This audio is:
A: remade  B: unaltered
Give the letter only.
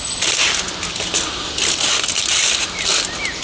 B